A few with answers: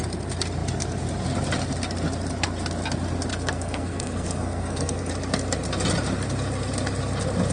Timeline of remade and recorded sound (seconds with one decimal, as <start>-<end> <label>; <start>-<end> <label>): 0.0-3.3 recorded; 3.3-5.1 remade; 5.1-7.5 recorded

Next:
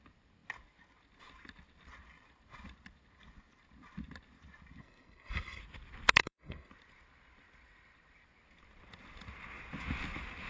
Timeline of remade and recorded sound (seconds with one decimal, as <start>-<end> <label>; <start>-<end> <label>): 0.0-4.8 recorded; 4.8-5.6 remade; 5.6-6.2 recorded; 6.2-6.7 remade; 6.7-10.5 recorded

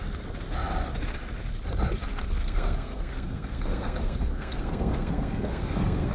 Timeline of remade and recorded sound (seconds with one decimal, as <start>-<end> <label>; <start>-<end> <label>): 0.0-2.4 recorded; 2.4-6.1 remade

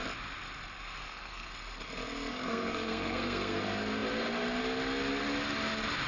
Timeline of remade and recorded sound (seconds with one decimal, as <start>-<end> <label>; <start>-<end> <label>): 0.0-1.0 recorded; 1.0-1.5 remade; 1.5-2.3 recorded; 2.3-3.6 remade; 3.6-6.1 recorded